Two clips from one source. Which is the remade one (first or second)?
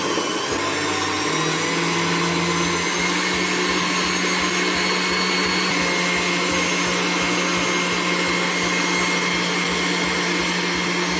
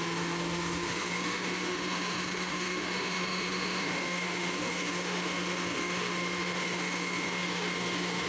second